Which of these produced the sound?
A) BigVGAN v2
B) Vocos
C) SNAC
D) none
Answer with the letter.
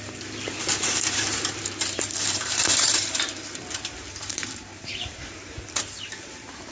A